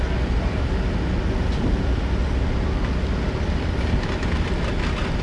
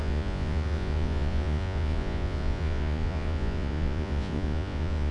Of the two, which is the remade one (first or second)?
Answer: second